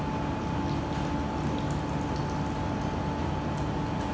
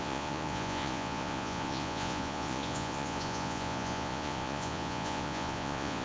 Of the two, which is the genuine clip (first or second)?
first